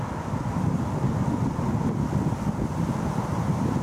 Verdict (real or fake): real